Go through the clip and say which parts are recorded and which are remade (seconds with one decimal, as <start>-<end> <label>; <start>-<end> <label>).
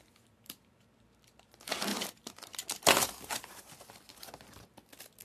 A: 0.0-1.9 recorded; 1.9-3.6 remade; 3.6-5.2 recorded